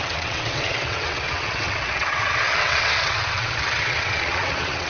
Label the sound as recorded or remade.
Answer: remade